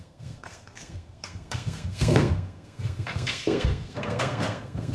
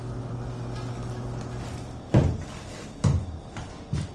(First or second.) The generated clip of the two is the first